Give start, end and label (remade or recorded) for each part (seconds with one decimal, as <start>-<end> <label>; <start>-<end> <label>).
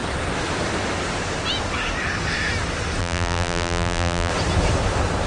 0.0-3.0 recorded; 3.0-4.3 remade; 4.3-5.3 recorded